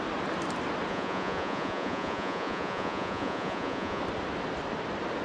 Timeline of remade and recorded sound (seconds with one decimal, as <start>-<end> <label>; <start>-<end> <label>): 0.0-0.9 recorded; 0.9-4.0 remade; 4.0-5.2 recorded